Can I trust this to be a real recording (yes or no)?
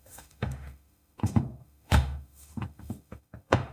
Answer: no